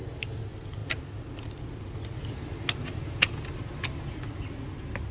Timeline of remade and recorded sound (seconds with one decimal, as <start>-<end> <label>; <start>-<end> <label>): 0.0-5.1 recorded